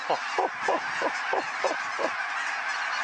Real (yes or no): yes